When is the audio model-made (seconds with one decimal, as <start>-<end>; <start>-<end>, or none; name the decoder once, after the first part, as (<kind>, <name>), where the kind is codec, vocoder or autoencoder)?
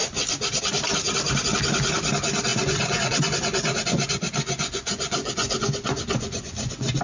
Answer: 2.5-7.0 (vocoder, Vocos)